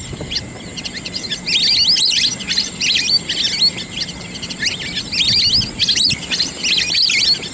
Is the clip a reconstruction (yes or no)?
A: no